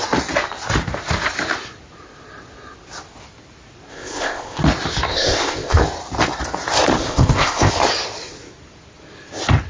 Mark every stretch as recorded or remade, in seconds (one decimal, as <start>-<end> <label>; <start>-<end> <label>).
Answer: 0.0-3.9 recorded; 3.9-4.6 remade; 4.6-5.1 recorded; 5.1-5.8 remade; 5.8-7.0 recorded; 7.0-7.7 remade; 7.7-9.7 recorded